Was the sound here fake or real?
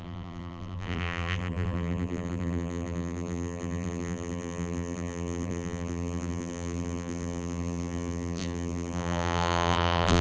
fake